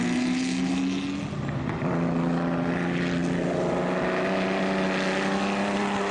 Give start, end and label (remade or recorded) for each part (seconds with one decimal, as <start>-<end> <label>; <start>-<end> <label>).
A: 0.0-6.1 recorded